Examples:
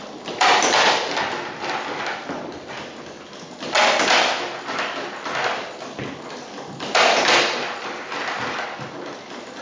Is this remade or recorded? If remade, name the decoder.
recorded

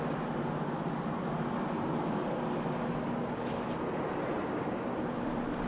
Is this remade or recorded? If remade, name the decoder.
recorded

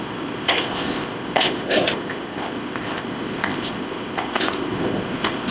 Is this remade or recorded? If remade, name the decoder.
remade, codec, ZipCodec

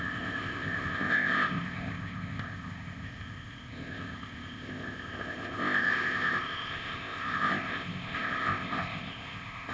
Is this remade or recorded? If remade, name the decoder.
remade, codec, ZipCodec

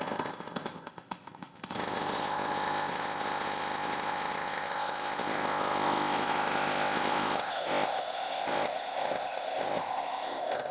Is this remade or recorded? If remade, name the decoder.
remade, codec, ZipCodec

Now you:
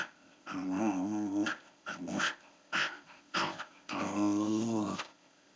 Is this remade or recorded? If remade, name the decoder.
remade, codec, ZipCodec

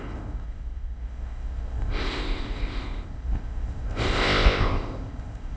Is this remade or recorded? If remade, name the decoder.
remade, codec, ZipCodec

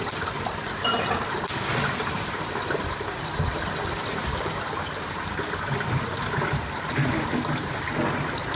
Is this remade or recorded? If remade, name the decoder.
recorded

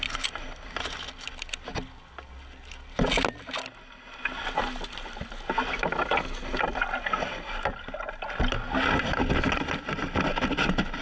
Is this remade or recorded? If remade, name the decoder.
recorded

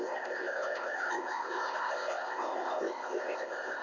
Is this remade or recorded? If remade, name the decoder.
remade, codec, ZipCodec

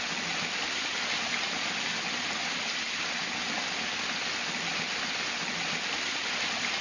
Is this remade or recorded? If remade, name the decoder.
recorded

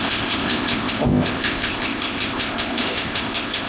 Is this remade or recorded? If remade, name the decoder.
remade, codec, ZipCodec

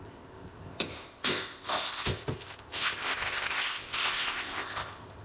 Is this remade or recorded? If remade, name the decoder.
remade, codec, ZipCodec